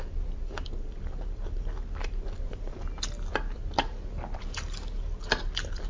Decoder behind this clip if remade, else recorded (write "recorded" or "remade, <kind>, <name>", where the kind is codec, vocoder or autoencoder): recorded